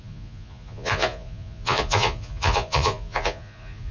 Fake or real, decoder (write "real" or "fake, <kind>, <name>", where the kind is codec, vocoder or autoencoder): fake, vocoder, Vocos